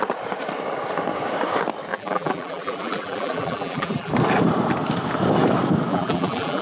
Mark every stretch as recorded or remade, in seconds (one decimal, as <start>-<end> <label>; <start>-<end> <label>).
0.0-1.9 recorded; 1.9-4.1 remade; 4.1-5.9 recorded; 5.9-6.6 remade